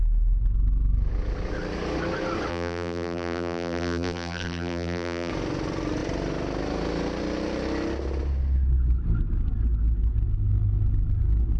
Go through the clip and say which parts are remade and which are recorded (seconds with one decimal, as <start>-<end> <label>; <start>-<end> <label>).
0.0-2.5 recorded; 2.5-5.3 remade; 5.3-11.6 recorded